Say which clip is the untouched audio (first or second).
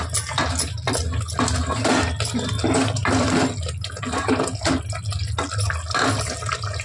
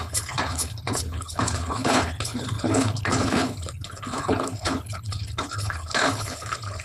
first